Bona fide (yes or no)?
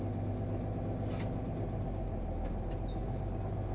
yes